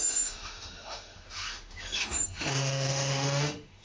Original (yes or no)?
no